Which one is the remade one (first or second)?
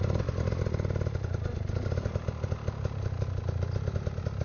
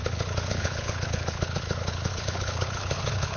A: second